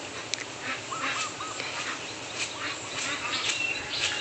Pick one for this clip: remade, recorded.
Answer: recorded